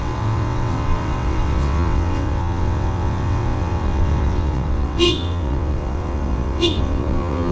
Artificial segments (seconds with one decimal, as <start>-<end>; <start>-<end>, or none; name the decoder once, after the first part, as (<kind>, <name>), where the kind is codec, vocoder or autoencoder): 0.0-7.5 (vocoder, WaveNeXt)